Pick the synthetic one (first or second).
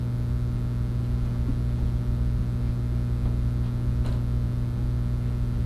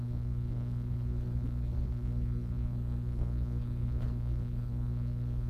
second